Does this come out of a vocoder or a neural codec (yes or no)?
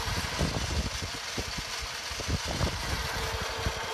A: no